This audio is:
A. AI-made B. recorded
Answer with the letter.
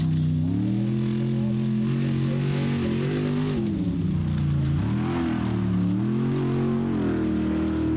B